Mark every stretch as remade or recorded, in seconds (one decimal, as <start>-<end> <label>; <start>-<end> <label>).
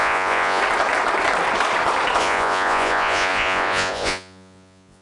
0.0-0.6 remade; 0.6-2.2 recorded; 2.2-5.0 remade